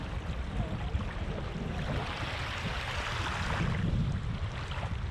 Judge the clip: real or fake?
real